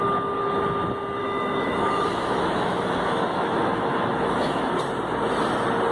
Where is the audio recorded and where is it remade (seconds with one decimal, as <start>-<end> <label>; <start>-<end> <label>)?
0.0-1.2 recorded; 1.2-4.7 remade; 4.7-5.9 recorded